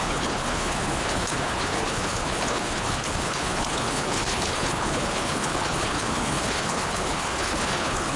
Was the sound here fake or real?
fake